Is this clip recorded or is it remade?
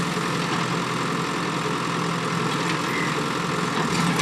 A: recorded